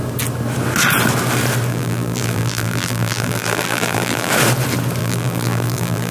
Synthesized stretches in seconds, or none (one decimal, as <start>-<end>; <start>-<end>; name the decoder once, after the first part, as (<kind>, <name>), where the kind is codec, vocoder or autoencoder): 1.7-4.3 (vocoder, BigVGAN v2); 5.0-6.1